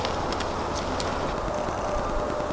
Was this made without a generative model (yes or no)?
yes